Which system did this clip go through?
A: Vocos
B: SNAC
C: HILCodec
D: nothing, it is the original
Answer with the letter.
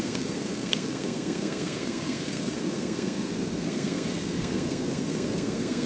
B